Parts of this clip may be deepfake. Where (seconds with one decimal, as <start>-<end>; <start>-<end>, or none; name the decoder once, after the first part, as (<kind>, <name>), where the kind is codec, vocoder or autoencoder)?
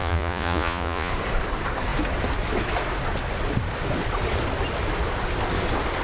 0.0-1.1 (vocoder, Vocos)